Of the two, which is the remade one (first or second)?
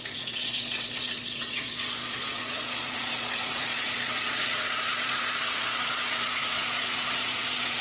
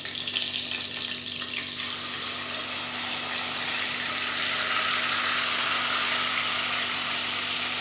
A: first